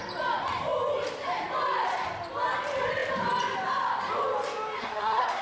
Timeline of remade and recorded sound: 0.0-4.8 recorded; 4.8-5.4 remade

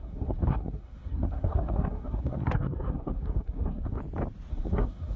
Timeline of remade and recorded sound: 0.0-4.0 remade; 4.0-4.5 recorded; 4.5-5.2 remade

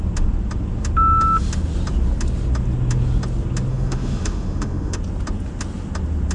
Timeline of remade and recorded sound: 0.0-3.7 recorded; 3.7-5.0 remade; 5.0-6.3 recorded